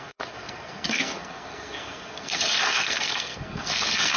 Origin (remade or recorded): remade